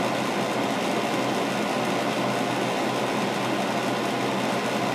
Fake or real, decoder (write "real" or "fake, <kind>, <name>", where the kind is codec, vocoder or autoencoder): real